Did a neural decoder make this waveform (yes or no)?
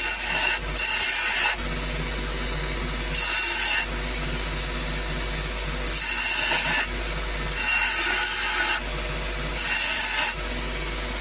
no